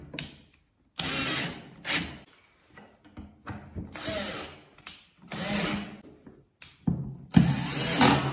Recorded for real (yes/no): yes